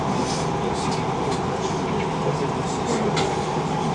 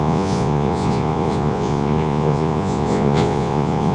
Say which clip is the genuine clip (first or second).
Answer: first